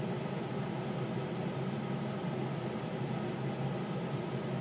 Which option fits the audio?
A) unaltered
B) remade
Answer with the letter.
A